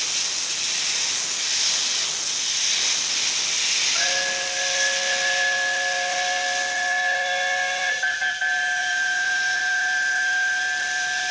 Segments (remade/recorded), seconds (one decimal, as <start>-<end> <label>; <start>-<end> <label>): 0.0-8.8 recorded; 8.8-9.6 remade; 9.6-11.3 recorded